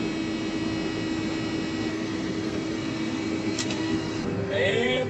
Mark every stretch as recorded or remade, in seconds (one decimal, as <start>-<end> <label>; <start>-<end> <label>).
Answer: 0.0-1.9 recorded; 1.9-5.1 remade